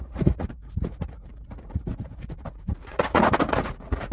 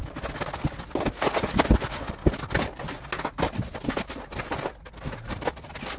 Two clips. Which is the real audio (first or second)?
second